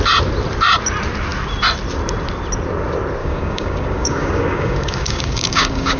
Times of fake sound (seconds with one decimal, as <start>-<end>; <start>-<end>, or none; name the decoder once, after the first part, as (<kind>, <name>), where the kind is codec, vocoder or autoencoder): 3.2-6.0 (codec, DAC)